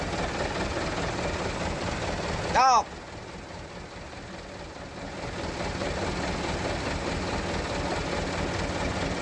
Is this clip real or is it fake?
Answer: real